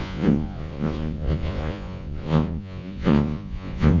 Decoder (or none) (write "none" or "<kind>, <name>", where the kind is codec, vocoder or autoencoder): vocoder, Vocos